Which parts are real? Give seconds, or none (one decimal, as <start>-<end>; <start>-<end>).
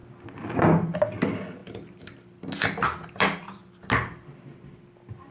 1.0-1.6; 4.8-5.3